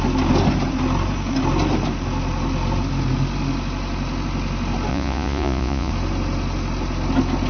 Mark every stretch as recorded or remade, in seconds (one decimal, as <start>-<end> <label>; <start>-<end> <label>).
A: 0.0-4.9 recorded; 4.9-5.9 remade; 5.9-7.5 recorded